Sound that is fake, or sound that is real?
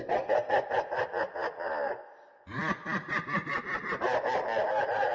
real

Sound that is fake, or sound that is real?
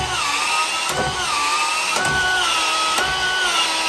real